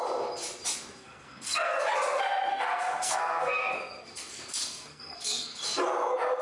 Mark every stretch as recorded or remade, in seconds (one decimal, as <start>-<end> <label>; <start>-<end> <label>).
0.0-1.0 recorded; 1.0-1.8 remade; 1.8-2.5 recorded; 2.5-5.6 remade; 5.6-6.4 recorded